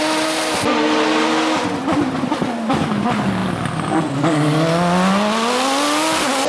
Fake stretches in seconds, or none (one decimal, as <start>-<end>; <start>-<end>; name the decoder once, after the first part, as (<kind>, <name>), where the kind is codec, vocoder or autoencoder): 1.8-2.4 (vocoder, BigVGAN v2)